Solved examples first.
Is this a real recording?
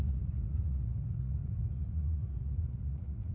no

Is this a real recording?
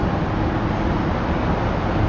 yes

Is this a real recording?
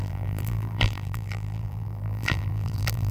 no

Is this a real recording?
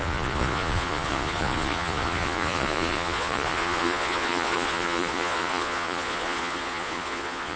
no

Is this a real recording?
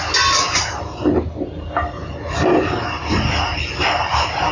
yes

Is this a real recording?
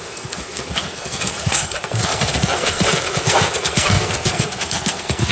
no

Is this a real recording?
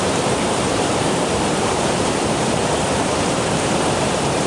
no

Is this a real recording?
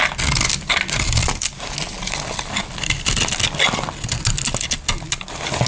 yes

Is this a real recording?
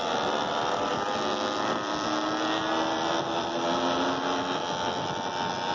yes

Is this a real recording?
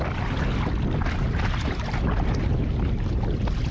yes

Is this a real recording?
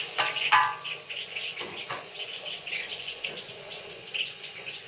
no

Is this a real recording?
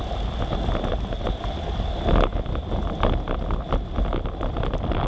yes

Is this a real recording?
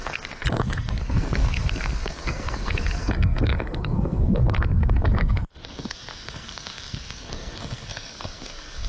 no